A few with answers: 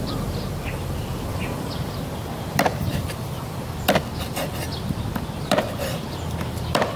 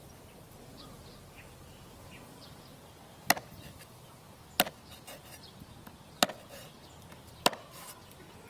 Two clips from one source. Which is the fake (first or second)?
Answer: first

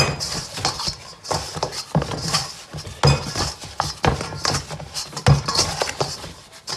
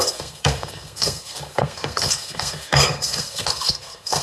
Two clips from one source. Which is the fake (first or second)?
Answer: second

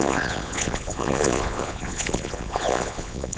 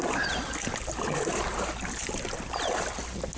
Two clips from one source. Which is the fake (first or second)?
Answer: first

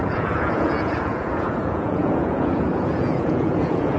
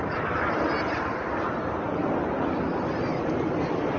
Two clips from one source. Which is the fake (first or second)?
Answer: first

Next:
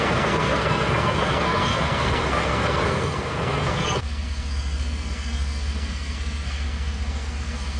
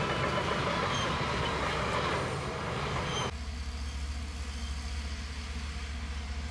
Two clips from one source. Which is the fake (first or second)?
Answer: first